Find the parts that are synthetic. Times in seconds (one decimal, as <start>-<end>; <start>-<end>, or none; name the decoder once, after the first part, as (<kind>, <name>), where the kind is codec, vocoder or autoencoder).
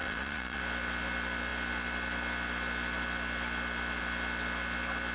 0.0-0.6 (vocoder, Vocos)